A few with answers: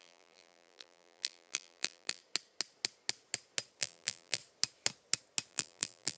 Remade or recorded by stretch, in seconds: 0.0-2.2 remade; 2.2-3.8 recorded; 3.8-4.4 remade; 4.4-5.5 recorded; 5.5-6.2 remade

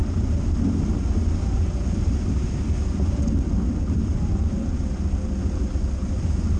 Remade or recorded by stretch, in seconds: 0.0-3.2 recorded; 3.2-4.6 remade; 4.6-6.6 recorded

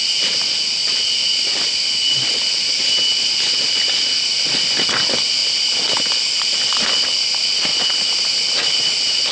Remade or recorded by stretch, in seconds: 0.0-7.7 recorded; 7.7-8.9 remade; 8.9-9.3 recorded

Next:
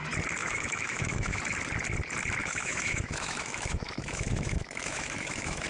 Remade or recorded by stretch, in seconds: 0.0-0.4 recorded; 0.4-1.4 remade; 1.4-2.4 recorded; 2.4-5.7 remade